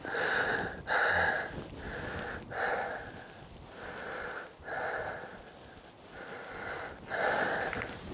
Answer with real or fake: real